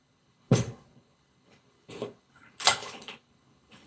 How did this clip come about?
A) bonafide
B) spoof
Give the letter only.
B